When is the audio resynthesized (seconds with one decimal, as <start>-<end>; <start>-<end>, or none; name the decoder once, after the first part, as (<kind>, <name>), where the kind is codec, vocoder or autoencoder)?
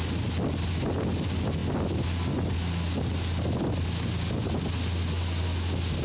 none